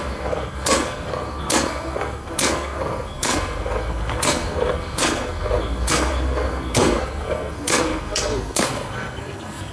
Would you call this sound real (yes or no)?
no